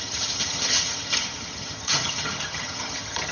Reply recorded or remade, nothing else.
remade